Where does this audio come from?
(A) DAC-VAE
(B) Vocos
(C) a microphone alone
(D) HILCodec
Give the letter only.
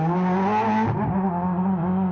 C